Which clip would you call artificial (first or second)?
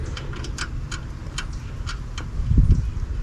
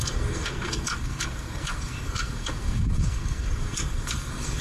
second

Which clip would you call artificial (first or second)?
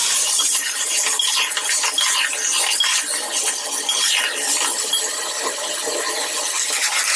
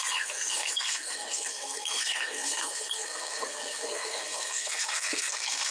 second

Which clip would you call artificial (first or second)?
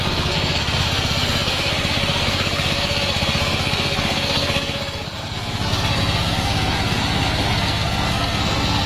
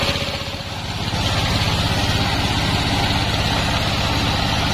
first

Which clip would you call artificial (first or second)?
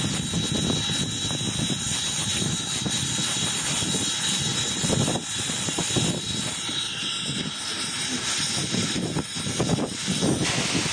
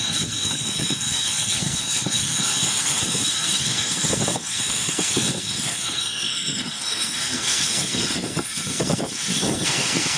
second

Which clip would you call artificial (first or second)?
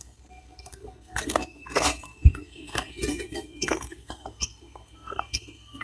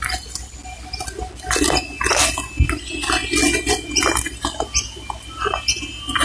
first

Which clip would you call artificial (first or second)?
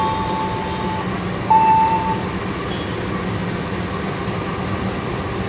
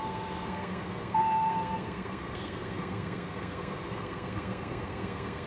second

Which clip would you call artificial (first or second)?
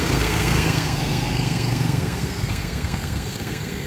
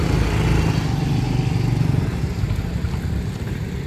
first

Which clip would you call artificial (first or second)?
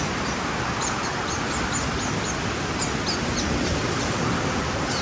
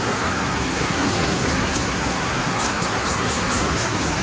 second